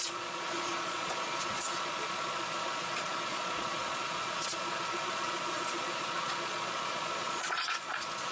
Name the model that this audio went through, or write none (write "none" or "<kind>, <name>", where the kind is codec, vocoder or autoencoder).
vocoder, Vocos